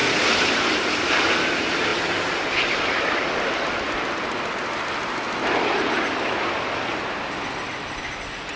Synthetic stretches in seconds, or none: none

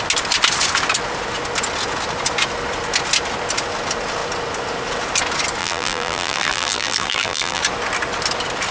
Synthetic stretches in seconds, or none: 5.6-7.6 (vocoder, BigVGAN v2)